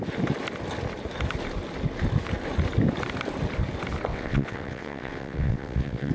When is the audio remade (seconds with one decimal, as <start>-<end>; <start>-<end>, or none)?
4.1-6.1